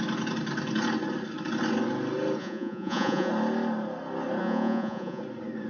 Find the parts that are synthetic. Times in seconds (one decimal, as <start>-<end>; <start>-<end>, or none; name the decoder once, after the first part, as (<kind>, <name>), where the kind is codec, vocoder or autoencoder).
2.4-3.3 (vocoder, Vocos); 4.4-5.2